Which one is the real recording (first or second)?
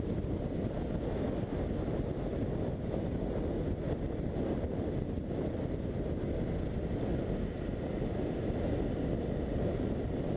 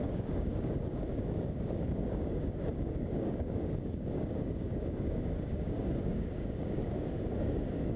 first